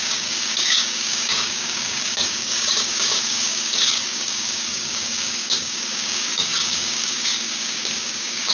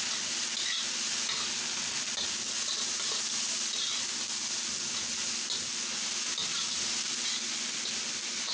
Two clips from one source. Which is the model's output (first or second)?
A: first